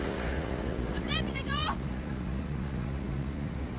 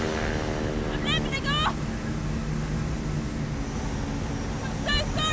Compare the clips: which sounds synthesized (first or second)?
first